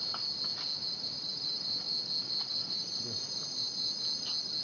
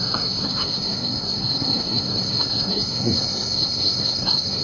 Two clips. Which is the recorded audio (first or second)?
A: first